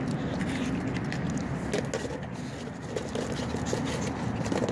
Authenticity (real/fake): real